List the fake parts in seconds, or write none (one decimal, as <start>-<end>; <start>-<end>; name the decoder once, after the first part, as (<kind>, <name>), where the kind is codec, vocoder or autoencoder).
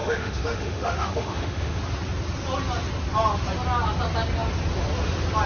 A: 0.0-1.8 (autoencoder, DAC-VAE)